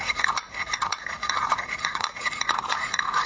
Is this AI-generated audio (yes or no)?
yes